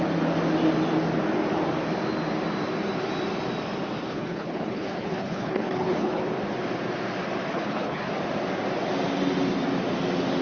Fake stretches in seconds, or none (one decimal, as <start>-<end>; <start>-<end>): 4.1-6.2; 7.5-8.1